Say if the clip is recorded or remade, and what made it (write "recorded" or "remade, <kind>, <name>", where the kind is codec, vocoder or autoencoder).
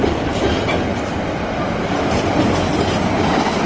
recorded